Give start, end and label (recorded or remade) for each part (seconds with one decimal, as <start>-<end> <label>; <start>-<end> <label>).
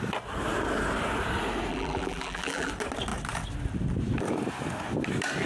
0.0-1.7 recorded; 1.7-2.7 remade; 2.7-5.5 recorded